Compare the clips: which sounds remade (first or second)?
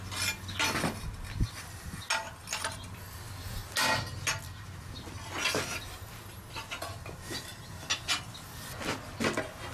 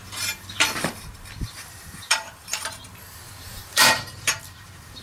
second